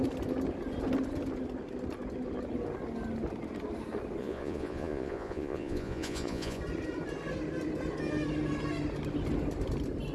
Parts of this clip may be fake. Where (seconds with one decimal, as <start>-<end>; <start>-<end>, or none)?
4.2-6.6

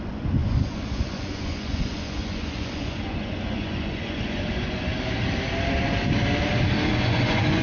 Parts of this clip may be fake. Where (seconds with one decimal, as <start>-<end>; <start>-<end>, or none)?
0.0-4.9; 7.0-7.6

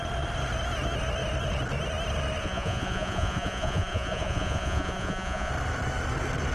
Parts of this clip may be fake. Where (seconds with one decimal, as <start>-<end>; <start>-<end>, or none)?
2.4-5.5

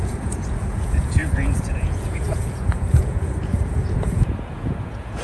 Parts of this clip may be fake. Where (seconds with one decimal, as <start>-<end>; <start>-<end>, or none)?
0.0-5.2

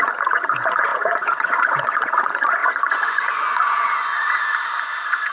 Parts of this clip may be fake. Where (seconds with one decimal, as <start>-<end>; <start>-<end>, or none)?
0.0-4.1; 4.8-5.3

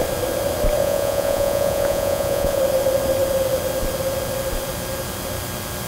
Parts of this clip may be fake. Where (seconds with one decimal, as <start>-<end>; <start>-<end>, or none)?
0.8-2.6

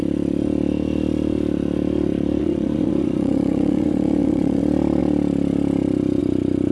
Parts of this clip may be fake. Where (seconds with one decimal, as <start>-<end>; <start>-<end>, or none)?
2.4-4.6

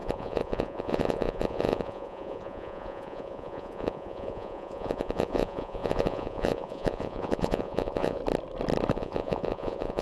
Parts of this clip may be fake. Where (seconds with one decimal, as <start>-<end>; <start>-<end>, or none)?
0.0-8.2; 8.9-10.0